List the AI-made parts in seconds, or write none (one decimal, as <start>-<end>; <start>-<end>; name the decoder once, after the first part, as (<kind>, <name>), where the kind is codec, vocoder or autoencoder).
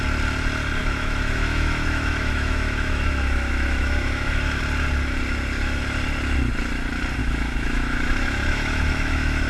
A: 0.8-4.6 (autoencoder, DAC-VAE); 7.2-9.5